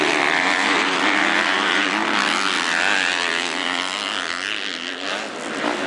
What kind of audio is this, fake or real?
real